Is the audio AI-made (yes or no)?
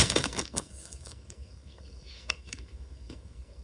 yes